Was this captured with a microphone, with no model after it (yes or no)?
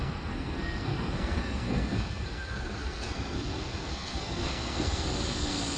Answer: no